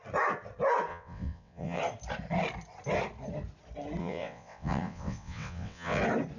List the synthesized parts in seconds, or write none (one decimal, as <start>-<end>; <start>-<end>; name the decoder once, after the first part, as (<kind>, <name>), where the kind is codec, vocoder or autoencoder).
0.9-1.8 (vocoder, WaveNeXt); 4.0-6.0